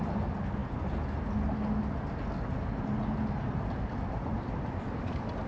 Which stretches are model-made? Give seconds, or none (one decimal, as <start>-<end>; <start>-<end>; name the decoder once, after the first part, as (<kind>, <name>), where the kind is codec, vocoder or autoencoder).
none